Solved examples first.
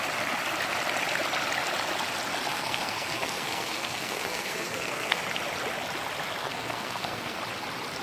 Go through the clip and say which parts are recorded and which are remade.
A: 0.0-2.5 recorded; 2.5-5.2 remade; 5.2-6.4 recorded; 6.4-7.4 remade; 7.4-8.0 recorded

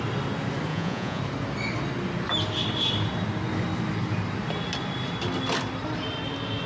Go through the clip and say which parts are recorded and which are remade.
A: 0.0-0.7 recorded; 0.7-1.2 remade; 1.2-6.7 recorded

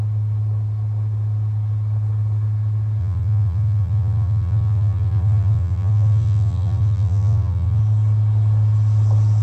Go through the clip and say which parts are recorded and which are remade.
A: 0.0-3.0 recorded; 3.0-7.8 remade; 7.8-9.4 recorded

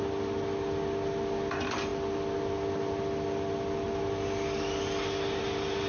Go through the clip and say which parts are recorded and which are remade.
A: 0.0-5.9 recorded